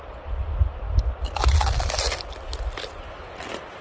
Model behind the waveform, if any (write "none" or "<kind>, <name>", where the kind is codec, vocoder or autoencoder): none